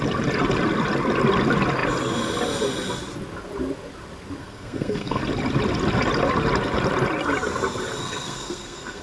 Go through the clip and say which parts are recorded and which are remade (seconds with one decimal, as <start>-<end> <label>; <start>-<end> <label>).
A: 0.0-4.4 recorded; 4.4-5.2 remade; 5.2-8.0 recorded; 8.0-9.0 remade